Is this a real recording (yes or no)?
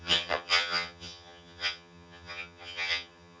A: no